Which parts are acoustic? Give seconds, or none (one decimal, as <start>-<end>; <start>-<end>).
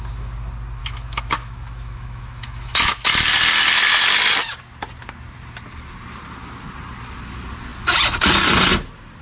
0.0-0.8; 3.1-9.2